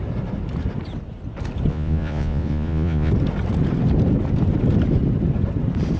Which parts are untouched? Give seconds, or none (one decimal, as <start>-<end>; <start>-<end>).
0.0-1.7; 3.1-6.0